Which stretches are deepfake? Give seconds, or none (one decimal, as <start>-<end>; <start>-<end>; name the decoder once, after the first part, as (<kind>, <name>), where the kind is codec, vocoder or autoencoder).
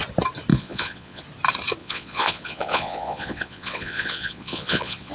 0.5-1.2 (vocoder, Vocos); 1.8-5.1